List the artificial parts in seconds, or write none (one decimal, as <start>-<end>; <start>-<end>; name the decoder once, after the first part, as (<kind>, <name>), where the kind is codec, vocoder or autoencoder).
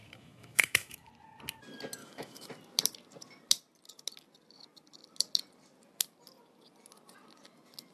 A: 0.0-1.1 (autoencoder, DAC-VAE); 2.0-2.5